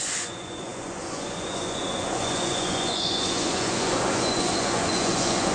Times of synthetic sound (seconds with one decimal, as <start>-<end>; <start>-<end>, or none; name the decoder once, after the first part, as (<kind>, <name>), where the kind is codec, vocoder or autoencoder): 0.0-5.5 (vocoder, Vocos)